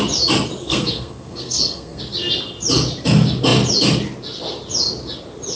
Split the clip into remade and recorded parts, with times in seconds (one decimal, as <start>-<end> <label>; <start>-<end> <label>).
0.0-0.6 recorded; 0.6-2.0 remade; 2.0-5.6 recorded